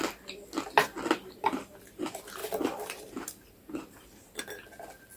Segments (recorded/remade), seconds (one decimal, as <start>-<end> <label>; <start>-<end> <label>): 0.0-1.2 recorded; 1.2-2.0 remade; 2.0-2.4 recorded; 2.4-4.4 remade; 4.4-5.2 recorded